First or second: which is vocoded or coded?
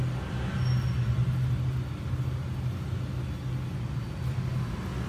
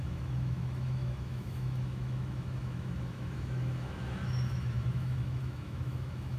second